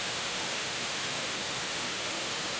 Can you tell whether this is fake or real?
fake